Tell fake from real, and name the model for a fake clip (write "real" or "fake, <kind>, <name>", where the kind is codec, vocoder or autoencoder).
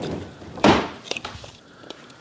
fake, vocoder, BigVGAN v2